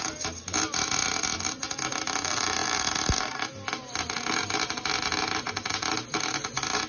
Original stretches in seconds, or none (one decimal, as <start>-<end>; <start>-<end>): 0.0-6.9